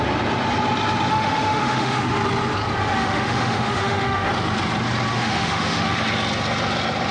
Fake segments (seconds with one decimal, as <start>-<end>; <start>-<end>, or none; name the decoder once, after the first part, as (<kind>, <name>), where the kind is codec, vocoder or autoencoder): 1.1-2.1 (autoencoder, DAC-VAE); 3.0-4.3; 5.1-6.0